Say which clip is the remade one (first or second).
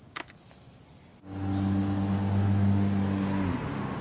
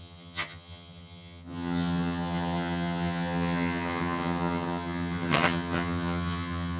second